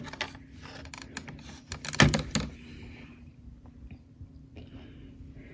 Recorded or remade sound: recorded